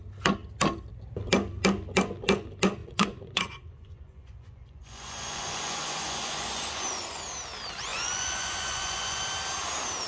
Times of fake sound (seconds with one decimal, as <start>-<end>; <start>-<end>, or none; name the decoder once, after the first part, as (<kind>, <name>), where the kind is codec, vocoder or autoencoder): 2.8-7.2 (vocoder, Vocos); 7.9-9.2